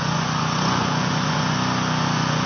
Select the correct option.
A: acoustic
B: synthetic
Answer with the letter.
B